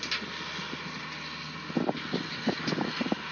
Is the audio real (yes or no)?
yes